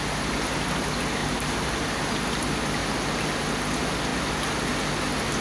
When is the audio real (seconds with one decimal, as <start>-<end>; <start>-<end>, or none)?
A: 0.0-1.2; 2.0-2.8; 3.5-5.4